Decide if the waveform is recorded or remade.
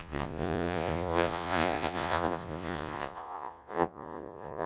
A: remade